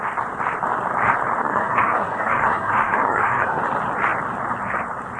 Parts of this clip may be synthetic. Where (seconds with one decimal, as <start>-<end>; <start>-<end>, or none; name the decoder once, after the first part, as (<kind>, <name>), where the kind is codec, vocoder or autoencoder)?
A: 1.4-3.6 (codec, SNAC)